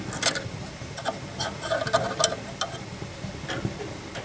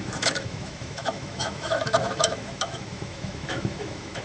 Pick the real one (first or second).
first